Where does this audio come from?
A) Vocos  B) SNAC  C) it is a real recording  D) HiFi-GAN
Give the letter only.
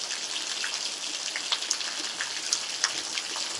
C